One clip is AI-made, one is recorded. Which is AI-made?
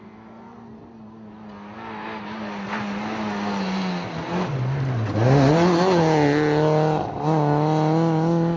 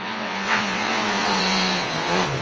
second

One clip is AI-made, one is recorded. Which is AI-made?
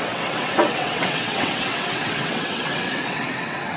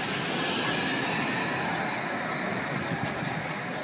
first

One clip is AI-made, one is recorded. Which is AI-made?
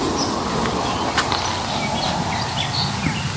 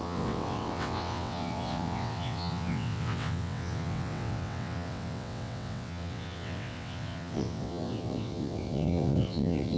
second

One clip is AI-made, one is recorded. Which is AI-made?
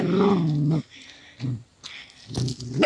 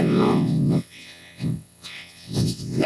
second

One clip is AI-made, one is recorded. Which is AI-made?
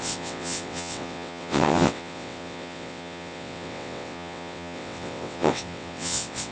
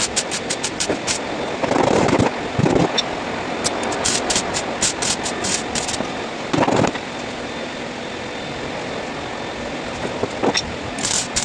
first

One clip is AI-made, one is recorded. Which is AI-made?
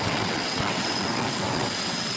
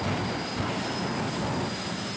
first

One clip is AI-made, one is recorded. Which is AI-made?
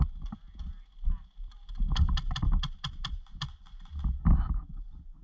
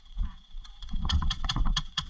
second